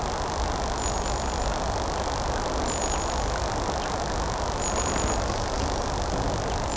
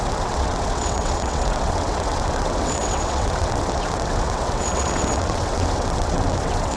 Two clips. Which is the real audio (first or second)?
first